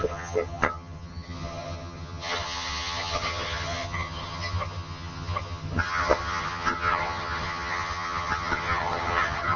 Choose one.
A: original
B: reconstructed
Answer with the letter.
B